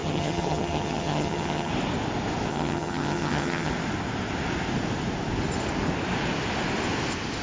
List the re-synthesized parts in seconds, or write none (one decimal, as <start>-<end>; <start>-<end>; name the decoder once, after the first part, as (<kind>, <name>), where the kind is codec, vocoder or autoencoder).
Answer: 0.0-1.7 (vocoder, HiFi-GAN); 2.5-3.7